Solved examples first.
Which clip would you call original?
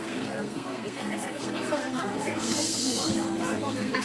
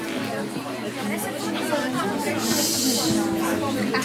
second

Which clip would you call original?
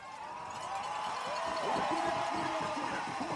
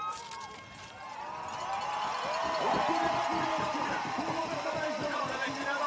second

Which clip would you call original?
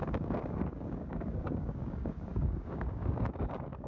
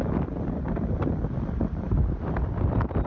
second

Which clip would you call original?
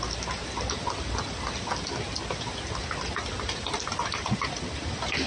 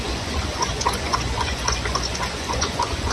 first